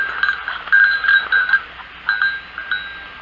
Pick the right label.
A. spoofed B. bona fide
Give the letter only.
B